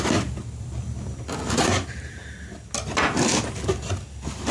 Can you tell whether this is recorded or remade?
recorded